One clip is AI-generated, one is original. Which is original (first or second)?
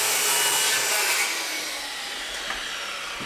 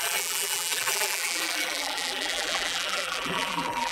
first